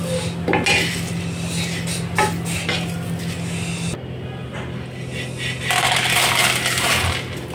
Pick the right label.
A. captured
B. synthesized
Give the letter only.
A